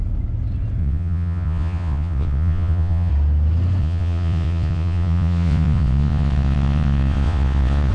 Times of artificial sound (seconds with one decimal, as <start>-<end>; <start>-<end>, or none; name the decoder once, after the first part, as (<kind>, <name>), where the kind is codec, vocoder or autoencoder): 0.8-3.1 (vocoder, Vocos); 3.8-7.9

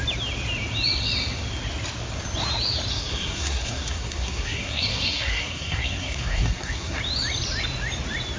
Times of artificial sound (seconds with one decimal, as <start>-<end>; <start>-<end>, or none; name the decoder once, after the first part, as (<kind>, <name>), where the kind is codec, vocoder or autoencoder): 2.9-7.0 (codec, SNAC)

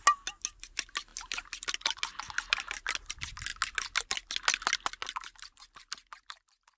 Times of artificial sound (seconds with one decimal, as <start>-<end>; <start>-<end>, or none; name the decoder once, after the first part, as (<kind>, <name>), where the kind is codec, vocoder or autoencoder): none

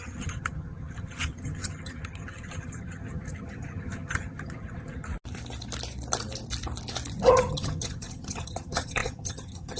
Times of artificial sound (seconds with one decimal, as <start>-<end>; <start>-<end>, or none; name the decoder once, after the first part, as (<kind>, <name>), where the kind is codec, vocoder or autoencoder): 0.0-5.1 (vocoder, HiFi-GAN); 7.3-9.8

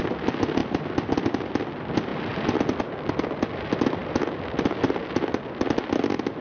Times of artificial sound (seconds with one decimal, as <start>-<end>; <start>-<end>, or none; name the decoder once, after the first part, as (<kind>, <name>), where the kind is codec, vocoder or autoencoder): none

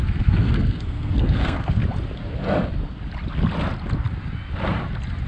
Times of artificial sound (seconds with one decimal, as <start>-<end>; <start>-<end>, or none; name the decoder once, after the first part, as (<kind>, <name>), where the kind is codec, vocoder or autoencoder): 0.0-1.8 (codec, SNAC)

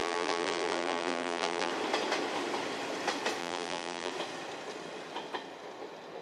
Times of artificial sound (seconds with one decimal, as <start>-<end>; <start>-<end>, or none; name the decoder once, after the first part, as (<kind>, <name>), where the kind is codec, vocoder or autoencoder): 0.0-1.7 (vocoder, BigVGAN v2); 3.4-4.1

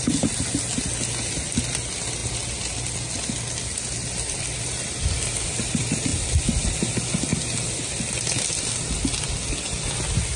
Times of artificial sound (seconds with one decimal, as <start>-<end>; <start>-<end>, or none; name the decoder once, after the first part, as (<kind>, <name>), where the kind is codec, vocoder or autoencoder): none